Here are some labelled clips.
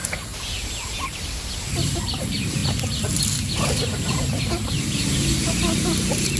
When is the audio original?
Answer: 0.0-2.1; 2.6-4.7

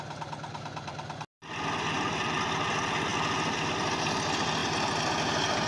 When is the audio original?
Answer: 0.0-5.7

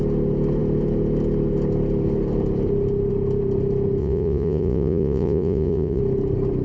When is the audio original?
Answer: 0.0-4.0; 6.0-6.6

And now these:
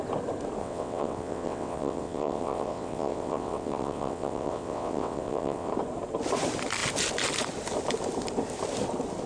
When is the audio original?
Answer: 0.0-0.6; 5.7-9.3